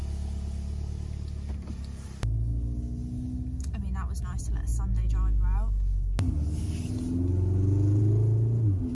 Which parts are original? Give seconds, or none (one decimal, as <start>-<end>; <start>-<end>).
0.0-8.9